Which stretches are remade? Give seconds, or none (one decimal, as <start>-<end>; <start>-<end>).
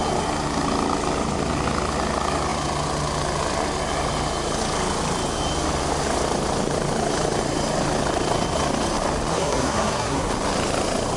9.3-10.3